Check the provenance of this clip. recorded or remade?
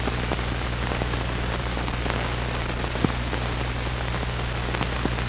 recorded